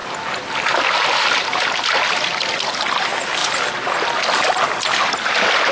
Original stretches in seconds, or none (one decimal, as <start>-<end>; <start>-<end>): 0.0-5.7